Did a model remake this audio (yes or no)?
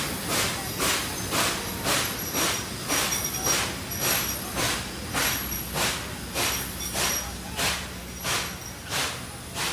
no